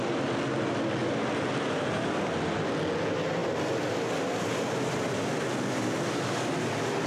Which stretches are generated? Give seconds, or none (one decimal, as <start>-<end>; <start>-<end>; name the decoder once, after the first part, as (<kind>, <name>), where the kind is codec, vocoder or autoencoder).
none